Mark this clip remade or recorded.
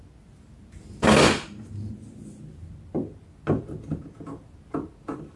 recorded